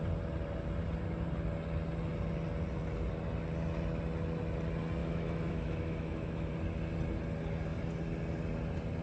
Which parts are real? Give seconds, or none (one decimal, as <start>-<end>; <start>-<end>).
0.0-5.0; 6.5-9.0